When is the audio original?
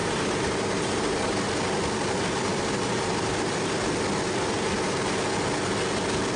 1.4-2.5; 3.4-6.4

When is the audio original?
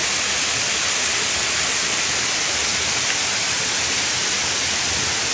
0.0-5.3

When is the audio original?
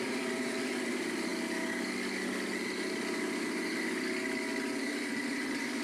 1.3-4.8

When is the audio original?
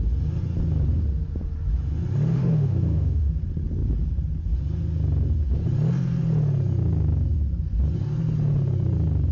0.0-2.3; 3.3-9.3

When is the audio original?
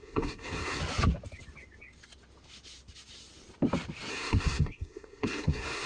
0.8-4.1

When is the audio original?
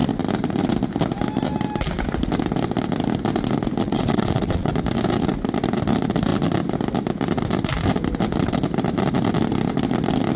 0.0-3.8; 4.7-10.4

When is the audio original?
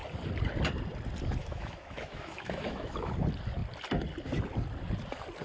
0.0-1.4; 3.1-5.4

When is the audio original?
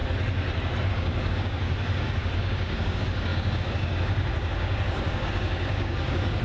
0.0-0.9